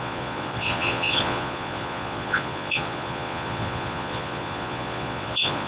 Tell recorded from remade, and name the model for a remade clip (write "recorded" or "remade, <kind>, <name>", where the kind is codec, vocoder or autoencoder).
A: remade, vocoder, Vocos